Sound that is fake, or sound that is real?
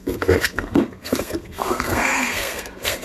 fake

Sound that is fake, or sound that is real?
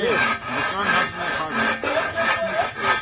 real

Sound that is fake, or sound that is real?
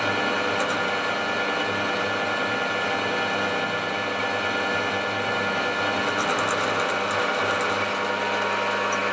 real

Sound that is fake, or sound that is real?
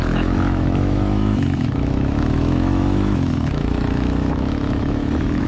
fake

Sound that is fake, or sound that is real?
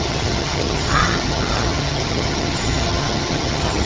fake